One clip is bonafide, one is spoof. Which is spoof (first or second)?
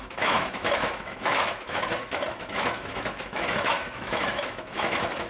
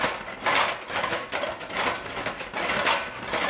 first